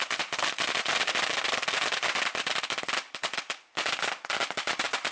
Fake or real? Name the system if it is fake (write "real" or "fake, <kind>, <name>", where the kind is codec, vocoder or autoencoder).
fake, vocoder, BigVGAN v2